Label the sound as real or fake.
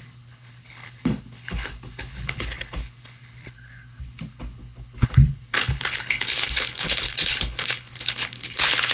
fake